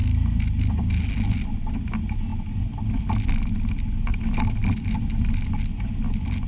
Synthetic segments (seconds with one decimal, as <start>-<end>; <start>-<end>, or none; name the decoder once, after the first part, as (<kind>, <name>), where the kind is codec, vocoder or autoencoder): none